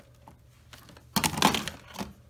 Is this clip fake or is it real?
real